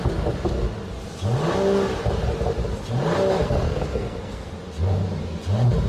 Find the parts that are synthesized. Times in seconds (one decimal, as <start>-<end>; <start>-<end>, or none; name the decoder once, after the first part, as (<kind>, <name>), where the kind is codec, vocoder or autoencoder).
3.4-4.5 (codec, SNAC)